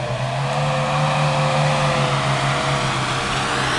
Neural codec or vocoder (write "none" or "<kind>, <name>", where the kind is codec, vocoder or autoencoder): none